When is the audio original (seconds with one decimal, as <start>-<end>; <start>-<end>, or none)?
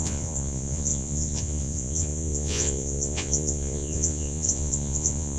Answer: none